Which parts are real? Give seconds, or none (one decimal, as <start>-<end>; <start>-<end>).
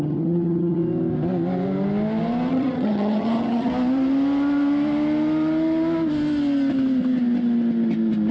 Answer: 0.8-2.5; 3.7-8.3